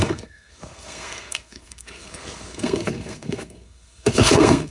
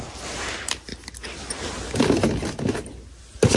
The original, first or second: second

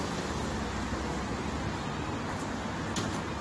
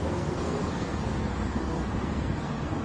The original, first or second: first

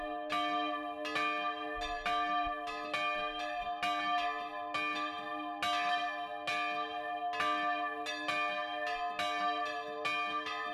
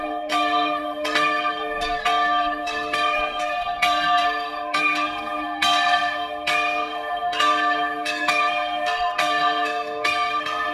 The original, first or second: first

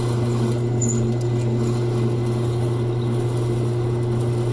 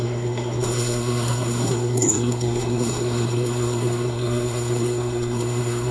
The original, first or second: first